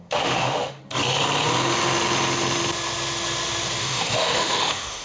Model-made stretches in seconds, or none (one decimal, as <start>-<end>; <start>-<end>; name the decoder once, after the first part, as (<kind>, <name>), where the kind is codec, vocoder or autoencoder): 0.0-0.8 (autoencoder, DAC-VAE); 3.8-5.0